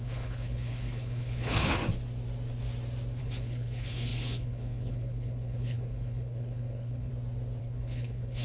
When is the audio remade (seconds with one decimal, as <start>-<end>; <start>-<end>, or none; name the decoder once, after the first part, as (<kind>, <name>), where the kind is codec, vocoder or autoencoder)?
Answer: 0.0-1.8 (codec, HILCodec); 3.2-7.1; 7.6-8.4